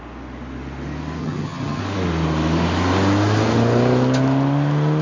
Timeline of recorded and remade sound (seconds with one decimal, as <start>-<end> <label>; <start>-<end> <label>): 0.0-1.2 recorded; 1.2-1.8 remade; 1.8-5.0 recorded